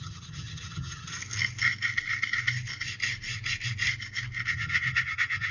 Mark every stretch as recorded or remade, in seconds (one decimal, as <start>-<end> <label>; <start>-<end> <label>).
0.0-1.2 remade; 1.2-4.5 recorded; 4.5-5.5 remade